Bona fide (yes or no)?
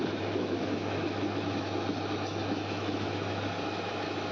no